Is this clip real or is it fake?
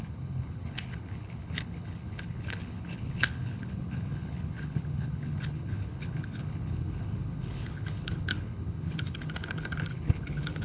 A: fake